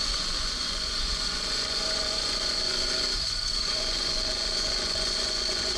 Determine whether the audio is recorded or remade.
remade